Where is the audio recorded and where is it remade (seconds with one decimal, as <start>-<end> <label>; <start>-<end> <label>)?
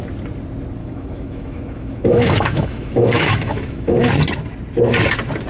0.0-0.8 recorded; 0.8-4.1 remade; 4.1-5.5 recorded